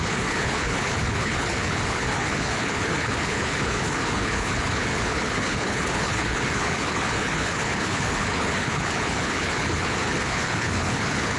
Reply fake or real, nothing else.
fake